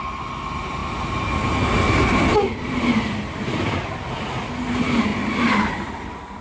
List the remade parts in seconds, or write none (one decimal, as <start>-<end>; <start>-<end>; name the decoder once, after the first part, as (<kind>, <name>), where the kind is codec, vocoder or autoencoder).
none